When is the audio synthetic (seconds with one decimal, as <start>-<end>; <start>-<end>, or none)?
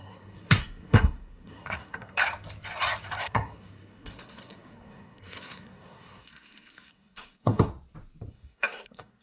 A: 0.0-2.3; 3.2-7.7; 8.3-9.2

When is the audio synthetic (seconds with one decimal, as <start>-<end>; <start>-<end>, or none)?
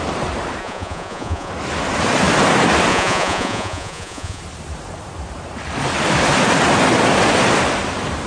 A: 0.6-1.5; 2.9-4.4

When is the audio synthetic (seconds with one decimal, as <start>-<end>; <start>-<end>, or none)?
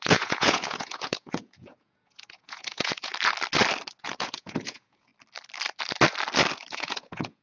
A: 0.0-3.1; 4.0-5.1; 6.7-7.4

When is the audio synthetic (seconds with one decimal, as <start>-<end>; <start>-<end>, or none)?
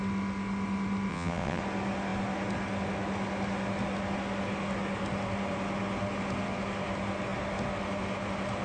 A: 1.1-1.6